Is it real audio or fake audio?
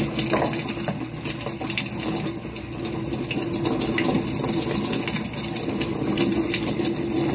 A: real